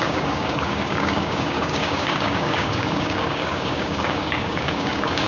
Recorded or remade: remade